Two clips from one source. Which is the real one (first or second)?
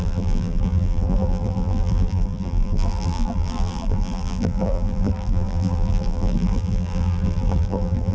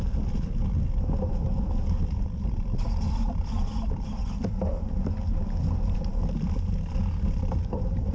second